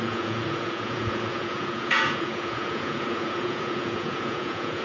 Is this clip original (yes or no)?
no